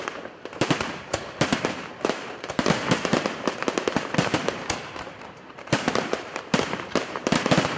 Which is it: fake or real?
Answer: fake